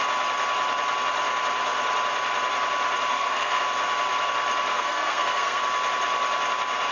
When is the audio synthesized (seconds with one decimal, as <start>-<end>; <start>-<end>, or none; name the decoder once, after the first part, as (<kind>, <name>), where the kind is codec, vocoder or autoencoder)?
3.1-3.6 (codec, SNAC); 4.7-5.6

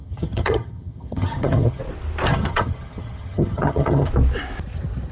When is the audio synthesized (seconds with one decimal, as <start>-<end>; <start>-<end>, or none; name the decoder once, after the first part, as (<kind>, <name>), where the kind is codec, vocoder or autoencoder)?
0.0-1.8 (vocoder, HiFi-GAN); 2.3-4.1